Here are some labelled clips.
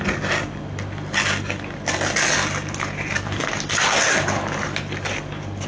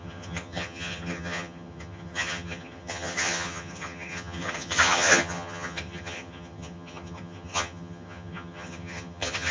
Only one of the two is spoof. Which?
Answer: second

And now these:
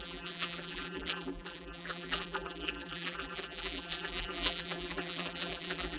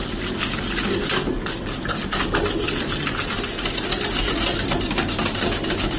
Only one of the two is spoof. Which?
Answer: first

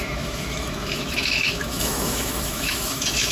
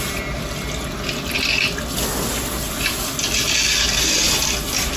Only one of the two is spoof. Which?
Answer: first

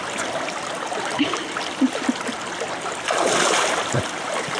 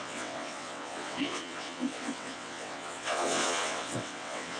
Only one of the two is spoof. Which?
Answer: second